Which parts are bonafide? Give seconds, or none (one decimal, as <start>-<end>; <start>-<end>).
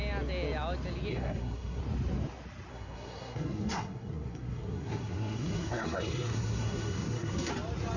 0.0-1.1; 1.8-2.7; 7.5-8.0